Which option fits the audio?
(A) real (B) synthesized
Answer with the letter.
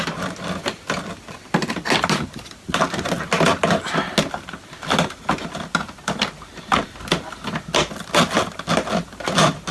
A